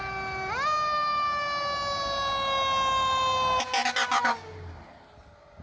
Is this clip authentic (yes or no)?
yes